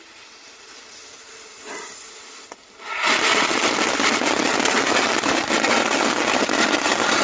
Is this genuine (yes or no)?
yes